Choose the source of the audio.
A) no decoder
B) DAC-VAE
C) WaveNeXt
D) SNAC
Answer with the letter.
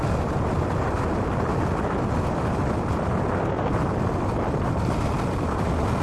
A